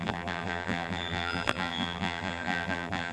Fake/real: fake